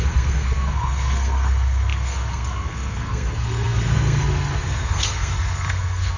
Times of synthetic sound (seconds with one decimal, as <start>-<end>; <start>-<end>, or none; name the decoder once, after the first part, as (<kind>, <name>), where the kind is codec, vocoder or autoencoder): 0.0-6.2 (codec, SNAC)

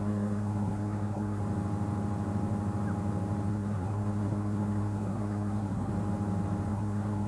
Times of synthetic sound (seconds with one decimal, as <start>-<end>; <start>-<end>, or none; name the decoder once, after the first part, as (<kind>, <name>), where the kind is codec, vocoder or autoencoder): 0.0-1.4 (codec, SNAC); 3.5-5.9; 6.7-7.3

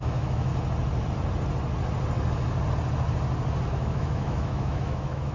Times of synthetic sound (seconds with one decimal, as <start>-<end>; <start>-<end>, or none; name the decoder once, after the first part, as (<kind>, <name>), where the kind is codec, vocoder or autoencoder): 0.0-0.5 (autoencoder, DAC-VAE); 3.7-5.3